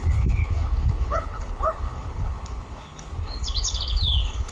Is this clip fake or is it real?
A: fake